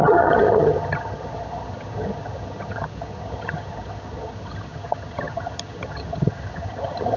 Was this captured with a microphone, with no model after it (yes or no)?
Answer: no